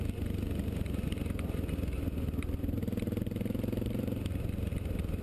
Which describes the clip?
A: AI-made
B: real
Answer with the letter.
B